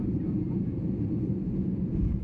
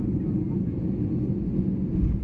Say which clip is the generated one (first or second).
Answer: first